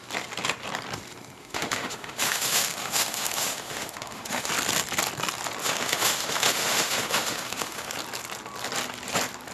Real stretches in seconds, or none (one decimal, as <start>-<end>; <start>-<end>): 0.0-1.4; 4.5-5.6; 7.9-9.5